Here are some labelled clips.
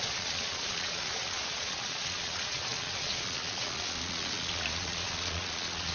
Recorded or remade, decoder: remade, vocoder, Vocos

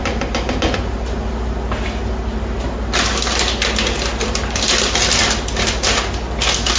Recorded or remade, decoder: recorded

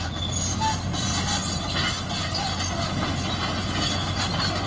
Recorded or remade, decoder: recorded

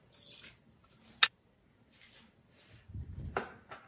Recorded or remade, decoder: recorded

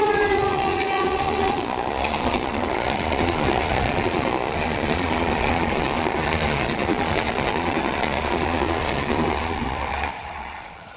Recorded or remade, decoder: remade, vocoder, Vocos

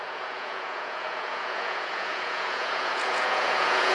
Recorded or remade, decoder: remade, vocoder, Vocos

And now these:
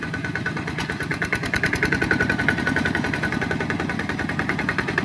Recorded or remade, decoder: remade, vocoder, Vocos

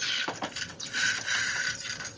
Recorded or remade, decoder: recorded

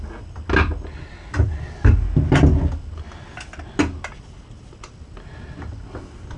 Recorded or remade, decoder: recorded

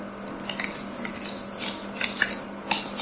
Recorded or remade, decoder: recorded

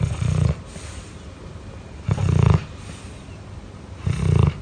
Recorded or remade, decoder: recorded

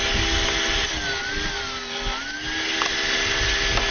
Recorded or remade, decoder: recorded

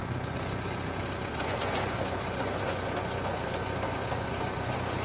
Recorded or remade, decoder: remade, vocoder, Vocos